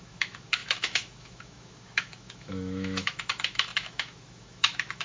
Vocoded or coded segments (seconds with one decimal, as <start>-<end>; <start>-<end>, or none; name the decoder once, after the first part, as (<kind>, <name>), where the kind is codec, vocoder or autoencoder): 0.0-5.0 (autoencoder, DAC-VAE)